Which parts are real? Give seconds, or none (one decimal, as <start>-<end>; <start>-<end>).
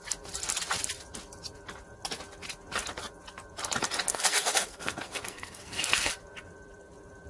0.0-4.1; 6.1-7.3